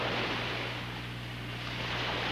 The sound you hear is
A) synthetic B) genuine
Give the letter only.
B